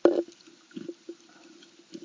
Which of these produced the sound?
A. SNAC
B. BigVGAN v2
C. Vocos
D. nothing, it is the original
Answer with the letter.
D